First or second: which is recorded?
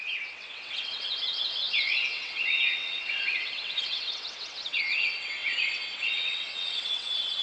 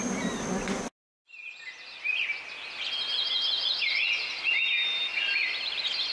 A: second